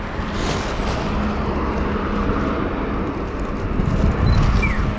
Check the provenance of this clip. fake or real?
real